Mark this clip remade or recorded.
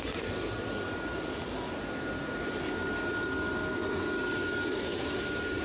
recorded